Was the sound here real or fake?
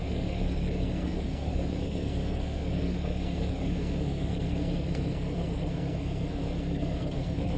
fake